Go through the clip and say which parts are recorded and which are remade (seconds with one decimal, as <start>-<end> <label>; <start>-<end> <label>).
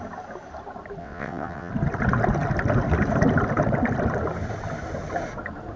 0.0-1.0 recorded; 1.0-1.7 remade; 1.7-5.8 recorded